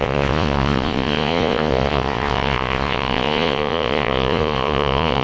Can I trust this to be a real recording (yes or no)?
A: no